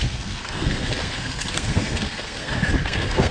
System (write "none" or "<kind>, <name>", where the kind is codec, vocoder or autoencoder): codec, SNAC